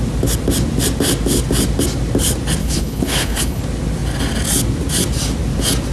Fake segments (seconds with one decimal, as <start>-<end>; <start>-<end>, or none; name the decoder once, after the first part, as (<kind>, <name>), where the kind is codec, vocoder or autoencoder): 2.6-3.6 (codec, HILCodec)